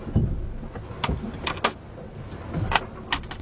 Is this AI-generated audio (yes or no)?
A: no